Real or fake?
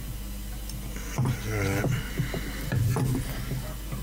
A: real